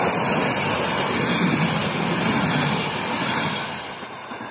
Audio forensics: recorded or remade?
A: recorded